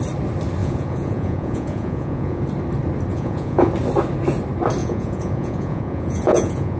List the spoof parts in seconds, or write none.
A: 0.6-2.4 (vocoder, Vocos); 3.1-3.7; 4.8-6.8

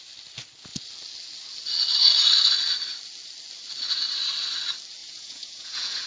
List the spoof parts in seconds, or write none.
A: 5.0-6.1 (vocoder, Vocos)

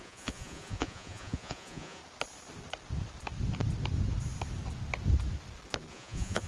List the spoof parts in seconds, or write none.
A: 0.0-2.0 (vocoder, Vocos); 5.9-6.5

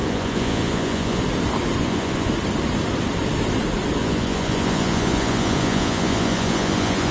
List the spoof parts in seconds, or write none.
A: 0.0-1.2 (vocoder, Vocos); 1.8-2.3; 4.0-7.1